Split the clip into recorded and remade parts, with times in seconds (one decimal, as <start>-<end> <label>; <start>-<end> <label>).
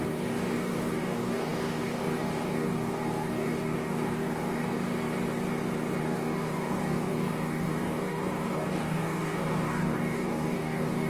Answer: 0.0-4.9 remade; 4.9-6.0 recorded; 6.0-11.1 remade